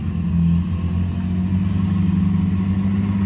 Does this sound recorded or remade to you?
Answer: recorded